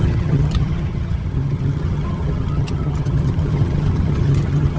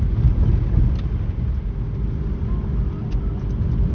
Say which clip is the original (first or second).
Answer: second